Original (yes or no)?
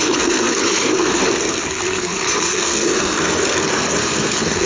no